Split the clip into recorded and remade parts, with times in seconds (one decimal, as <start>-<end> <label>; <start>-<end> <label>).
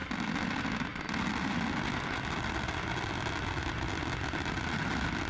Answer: 0.0-5.3 recorded